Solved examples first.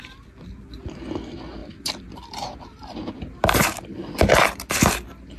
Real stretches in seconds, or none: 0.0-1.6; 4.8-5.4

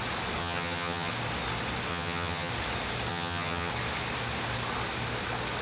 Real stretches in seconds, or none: 0.0-0.4; 1.1-1.9; 2.5-3.1; 3.7-5.6

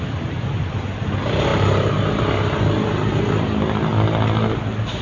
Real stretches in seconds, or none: 0.0-5.0

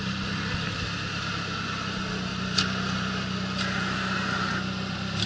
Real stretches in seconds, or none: 0.0-5.3

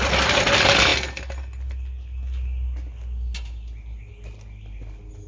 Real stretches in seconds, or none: 0.0-5.3

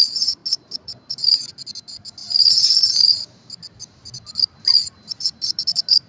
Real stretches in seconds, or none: 0.0-6.1